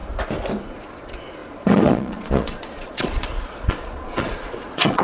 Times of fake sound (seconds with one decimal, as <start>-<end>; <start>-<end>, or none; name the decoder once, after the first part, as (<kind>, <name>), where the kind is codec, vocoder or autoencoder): 0.7-5.0 (vocoder, Vocos)